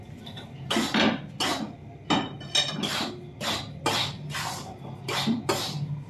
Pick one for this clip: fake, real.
real